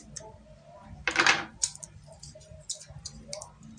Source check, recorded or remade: recorded